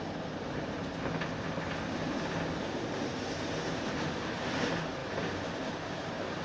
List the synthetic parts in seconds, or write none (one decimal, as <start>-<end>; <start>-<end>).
0.0-0.8; 2.6-6.4